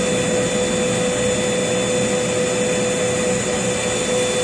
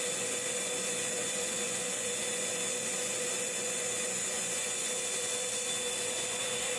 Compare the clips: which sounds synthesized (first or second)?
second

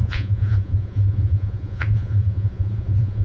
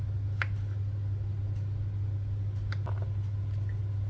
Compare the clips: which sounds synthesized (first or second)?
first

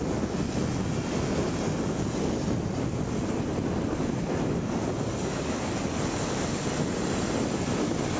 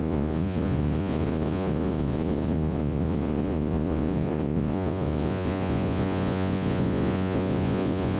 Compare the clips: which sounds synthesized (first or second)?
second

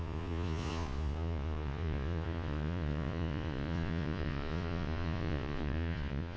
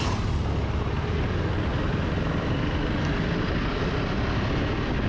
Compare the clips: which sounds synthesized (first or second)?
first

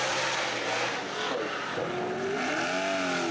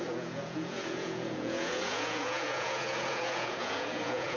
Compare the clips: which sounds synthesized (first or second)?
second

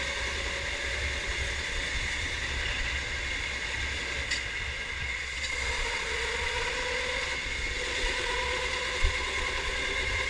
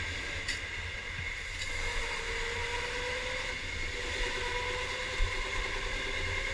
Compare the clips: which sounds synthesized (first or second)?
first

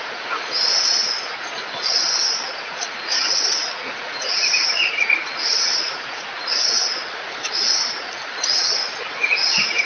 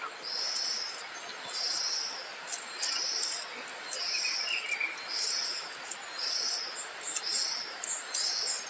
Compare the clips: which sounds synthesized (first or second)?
first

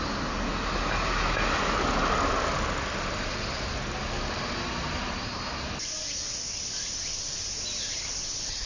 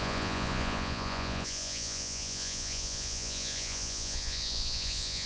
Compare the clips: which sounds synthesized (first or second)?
second